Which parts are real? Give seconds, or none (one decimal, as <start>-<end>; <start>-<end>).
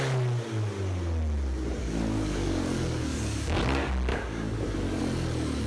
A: 0.0-1.8; 3.6-4.1; 5.0-5.7